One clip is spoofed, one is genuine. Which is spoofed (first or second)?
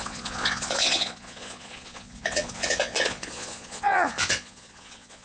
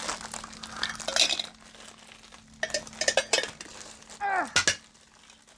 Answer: first